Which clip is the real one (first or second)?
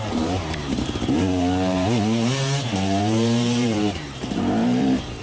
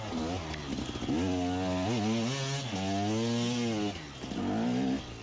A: second